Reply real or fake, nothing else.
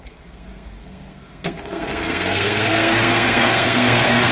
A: fake